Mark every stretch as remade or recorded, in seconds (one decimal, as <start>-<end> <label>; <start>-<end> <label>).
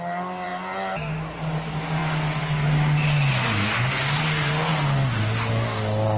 0.0-6.2 recorded